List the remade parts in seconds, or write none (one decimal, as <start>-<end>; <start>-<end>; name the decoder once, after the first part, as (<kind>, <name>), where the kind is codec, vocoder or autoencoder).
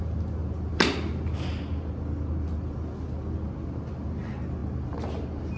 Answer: none